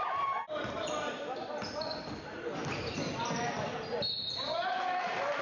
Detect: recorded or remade remade